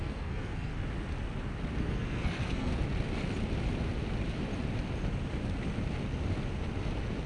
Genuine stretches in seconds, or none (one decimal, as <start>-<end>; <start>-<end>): 0.7-1.8; 2.7-7.3